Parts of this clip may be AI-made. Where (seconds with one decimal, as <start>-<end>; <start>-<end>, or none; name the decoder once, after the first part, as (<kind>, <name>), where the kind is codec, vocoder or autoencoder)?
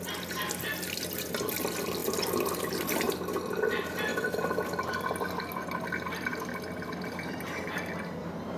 none